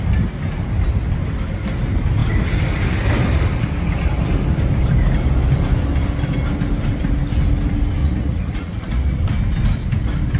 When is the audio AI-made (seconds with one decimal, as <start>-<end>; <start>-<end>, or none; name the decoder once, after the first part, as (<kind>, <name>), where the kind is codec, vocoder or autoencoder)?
8.0-9.2 (vocoder, Vocos)